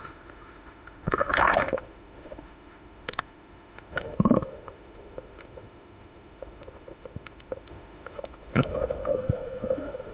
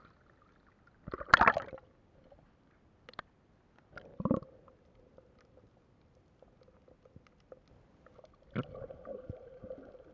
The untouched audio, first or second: second